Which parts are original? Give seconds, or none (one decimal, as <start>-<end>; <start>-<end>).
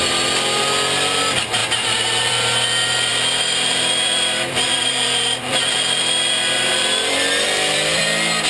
0.0-3.1; 8.0-8.5